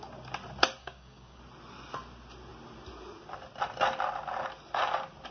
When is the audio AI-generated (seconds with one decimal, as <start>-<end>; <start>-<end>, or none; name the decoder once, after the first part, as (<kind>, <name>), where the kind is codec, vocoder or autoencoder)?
0.8-1.4 (codec, DAC)